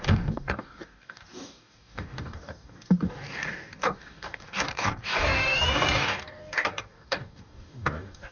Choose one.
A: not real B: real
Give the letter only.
A